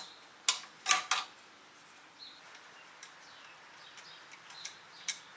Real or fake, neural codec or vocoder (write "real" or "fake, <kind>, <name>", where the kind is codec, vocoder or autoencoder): real